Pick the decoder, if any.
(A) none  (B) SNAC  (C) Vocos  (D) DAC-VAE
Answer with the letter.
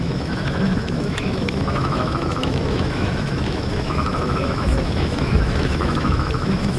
D